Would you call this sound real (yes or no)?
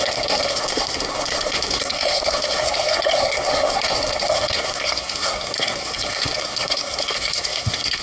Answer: no